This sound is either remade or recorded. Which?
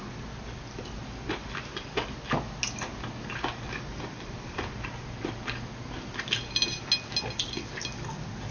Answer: recorded